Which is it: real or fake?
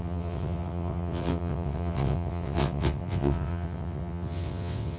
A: fake